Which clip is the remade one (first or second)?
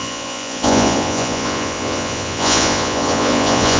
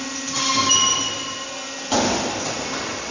first